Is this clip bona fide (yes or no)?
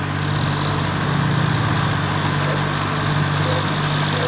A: yes